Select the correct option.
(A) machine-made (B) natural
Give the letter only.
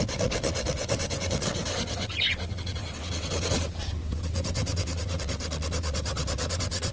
A